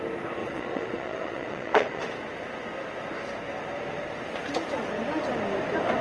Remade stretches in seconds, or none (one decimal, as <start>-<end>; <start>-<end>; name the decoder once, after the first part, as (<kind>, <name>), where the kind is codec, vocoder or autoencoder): 0.4-2.0 (vocoder, Vocos)